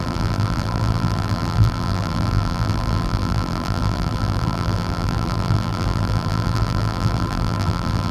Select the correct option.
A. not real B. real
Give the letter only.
A